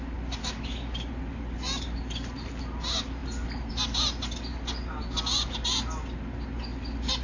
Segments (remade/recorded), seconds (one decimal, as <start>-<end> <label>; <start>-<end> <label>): 0.0-0.4 recorded; 0.4-1.1 remade; 1.1-7.2 recorded